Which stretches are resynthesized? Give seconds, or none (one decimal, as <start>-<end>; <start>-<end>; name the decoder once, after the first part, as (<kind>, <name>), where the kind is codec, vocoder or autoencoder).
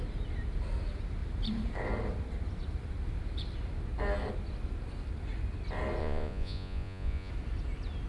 6.0-7.3 (vocoder, Vocos)